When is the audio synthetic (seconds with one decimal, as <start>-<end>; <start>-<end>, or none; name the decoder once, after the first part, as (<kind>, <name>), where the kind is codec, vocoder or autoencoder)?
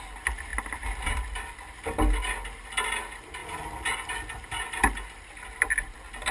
none